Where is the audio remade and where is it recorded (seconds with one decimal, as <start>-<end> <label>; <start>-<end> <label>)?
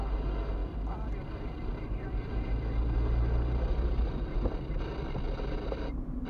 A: 0.0-0.6 recorded; 0.6-2.5 remade; 2.5-6.3 recorded